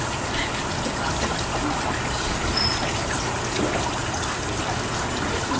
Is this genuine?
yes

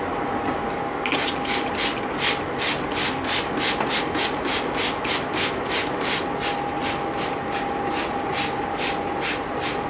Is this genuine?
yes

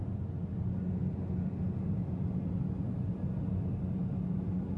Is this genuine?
yes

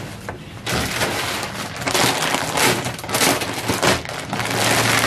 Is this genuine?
yes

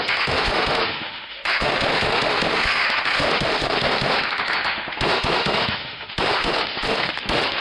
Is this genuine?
no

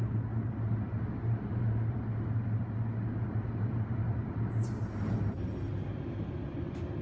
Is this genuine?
yes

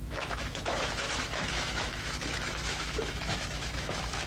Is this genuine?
no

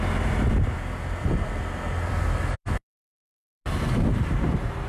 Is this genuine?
yes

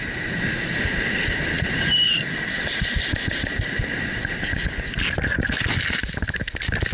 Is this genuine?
yes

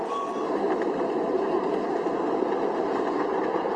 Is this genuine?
yes